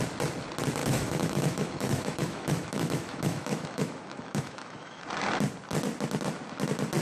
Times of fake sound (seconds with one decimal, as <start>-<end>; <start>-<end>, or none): 0.8-5.0